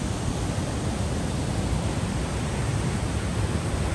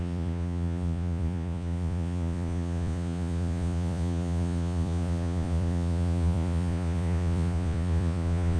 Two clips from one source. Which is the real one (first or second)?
first